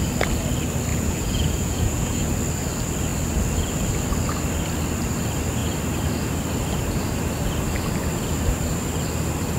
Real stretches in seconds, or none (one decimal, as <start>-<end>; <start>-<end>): 0.0-0.9; 2.3-9.6